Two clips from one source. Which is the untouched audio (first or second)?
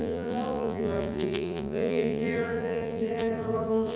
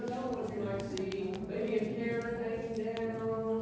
second